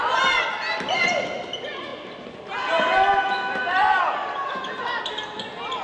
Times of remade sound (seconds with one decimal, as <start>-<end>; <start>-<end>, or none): none